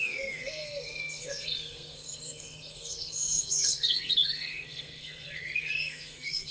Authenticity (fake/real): fake